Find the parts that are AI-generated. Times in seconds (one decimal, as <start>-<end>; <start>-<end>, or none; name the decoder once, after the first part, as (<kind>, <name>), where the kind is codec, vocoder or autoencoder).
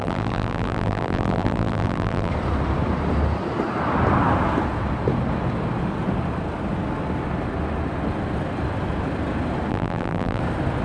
0.0-2.3 (vocoder, BigVGAN v2); 9.7-10.4